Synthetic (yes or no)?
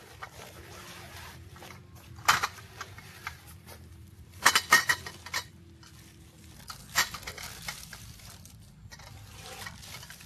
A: yes